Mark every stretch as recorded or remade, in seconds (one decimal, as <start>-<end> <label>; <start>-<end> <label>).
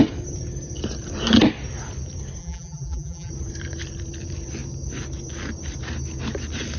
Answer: 0.0-2.4 recorded; 2.4-3.3 remade; 3.3-6.8 recorded